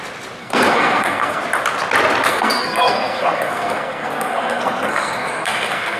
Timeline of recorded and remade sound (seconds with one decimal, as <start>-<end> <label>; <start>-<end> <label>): 0.0-0.4 recorded; 0.4-1.4 remade; 1.4-2.3 recorded; 2.3-6.0 remade